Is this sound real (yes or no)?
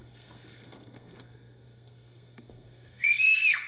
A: no